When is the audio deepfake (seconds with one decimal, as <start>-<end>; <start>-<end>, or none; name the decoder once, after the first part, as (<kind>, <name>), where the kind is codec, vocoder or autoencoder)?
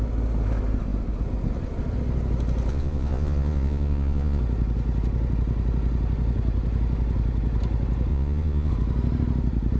2.7-4.4 (vocoder, Vocos); 8.1-8.7